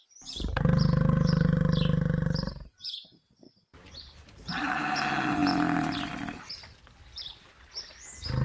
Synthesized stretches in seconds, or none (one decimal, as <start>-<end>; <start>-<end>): 0.0-5.0